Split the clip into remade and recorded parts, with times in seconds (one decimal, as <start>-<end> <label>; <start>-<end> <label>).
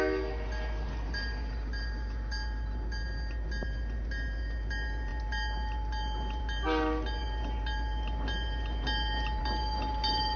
0.0-10.4 recorded